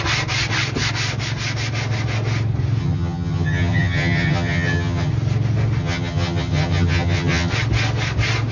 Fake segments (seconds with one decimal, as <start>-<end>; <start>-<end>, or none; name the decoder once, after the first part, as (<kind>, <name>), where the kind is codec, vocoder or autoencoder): 2.8-5.1 (vocoder, HiFi-GAN); 5.8-7.5